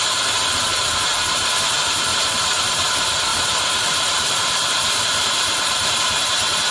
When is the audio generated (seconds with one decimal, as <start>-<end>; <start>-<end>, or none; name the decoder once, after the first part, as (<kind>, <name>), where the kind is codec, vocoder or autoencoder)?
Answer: 2.1-2.9 (vocoder, BigVGAN v2); 3.3-6.0